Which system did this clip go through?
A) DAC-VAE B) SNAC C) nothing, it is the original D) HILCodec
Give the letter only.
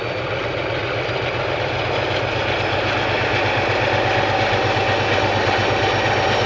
C